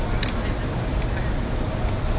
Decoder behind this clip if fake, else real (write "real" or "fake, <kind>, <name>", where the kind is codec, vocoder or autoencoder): real